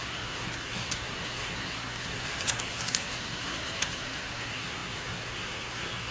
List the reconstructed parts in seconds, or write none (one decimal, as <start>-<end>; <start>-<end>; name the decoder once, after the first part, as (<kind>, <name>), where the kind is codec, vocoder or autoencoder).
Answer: 0.0-6.1 (codec, SNAC)

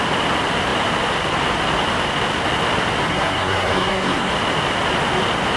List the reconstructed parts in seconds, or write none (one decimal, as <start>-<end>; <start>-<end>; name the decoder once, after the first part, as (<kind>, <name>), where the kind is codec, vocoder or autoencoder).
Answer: 3.1-4.3 (codec, SNAC)